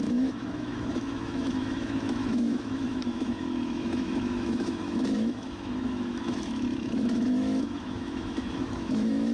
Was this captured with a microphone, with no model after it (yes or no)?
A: no